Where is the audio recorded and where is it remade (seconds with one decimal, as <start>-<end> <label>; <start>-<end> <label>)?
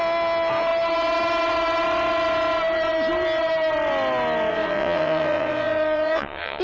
0.0-4.5 recorded; 4.5-6.6 remade